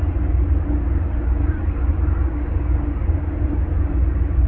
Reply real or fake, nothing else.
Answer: real